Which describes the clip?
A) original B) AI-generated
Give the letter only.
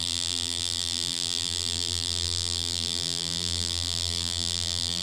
B